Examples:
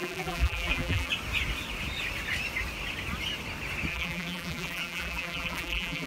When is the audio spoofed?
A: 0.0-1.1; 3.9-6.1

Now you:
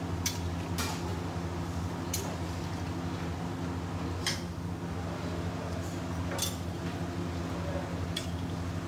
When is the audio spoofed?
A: none

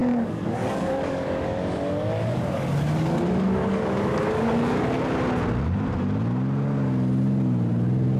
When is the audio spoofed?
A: 0.0-4.9

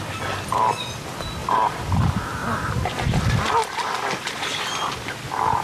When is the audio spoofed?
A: 1.4-2.0; 2.4-3.0

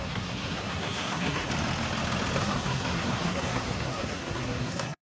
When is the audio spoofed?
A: 0.0-1.5; 2.4-5.0

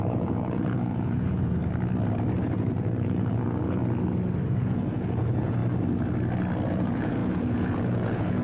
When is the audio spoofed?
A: 0.0-1.6; 2.4-3.8; 4.5-5.6; 6.7-8.4

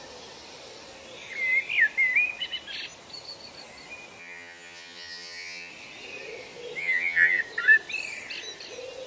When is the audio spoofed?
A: 4.2-5.7; 6.8-7.4